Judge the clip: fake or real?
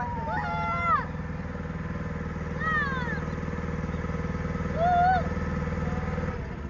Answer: real